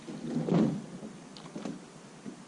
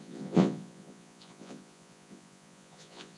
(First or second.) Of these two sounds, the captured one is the first